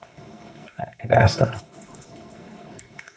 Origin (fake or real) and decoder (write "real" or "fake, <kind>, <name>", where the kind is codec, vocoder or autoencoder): fake, codec, SNAC